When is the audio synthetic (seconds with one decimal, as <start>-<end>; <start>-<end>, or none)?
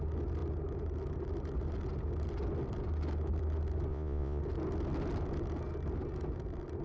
3.9-4.4